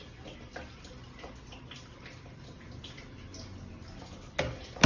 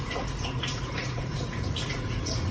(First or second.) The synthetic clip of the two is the second